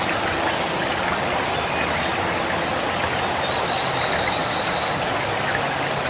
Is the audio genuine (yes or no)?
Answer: yes